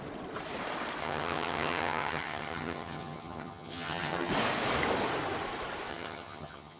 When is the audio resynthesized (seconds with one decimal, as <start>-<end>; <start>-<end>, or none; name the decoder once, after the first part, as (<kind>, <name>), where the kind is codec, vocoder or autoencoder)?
1.0-4.3 (vocoder, HiFi-GAN); 5.9-6.8